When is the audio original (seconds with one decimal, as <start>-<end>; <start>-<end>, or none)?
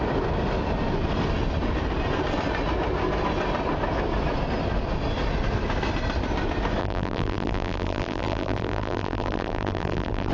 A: 0.0-6.8